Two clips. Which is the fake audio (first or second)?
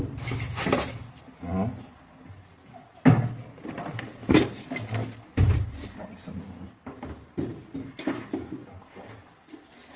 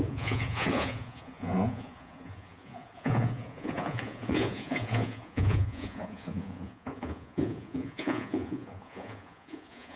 second